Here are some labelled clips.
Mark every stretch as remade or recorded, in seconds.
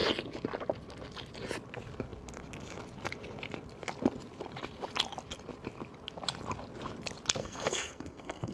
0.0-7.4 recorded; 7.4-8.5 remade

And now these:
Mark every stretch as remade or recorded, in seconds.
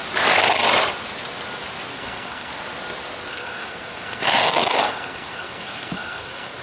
0.0-1.9 recorded; 1.9-2.5 remade; 2.5-3.3 recorded; 3.3-6.6 remade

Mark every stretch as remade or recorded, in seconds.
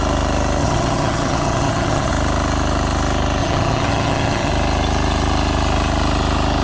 0.0-0.6 recorded; 0.6-2.1 remade; 2.1-3.4 recorded; 3.4-4.5 remade; 4.5-6.6 recorded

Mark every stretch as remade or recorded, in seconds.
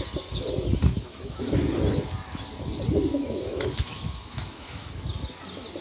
0.0-0.9 recorded; 0.9-1.4 remade; 1.4-3.1 recorded; 3.1-4.9 remade; 4.9-5.8 recorded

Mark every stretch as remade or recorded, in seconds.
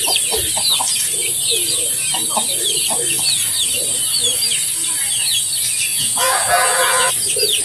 0.0-5.9 recorded; 5.9-7.1 remade; 7.1-7.6 recorded